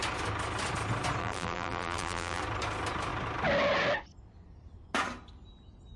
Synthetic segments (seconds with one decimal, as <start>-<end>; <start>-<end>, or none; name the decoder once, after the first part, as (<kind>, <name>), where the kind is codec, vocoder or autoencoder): 1.2-2.4 (vocoder, BigVGAN v2)